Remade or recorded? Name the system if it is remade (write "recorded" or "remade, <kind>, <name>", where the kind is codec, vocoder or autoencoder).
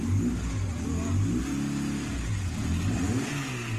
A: recorded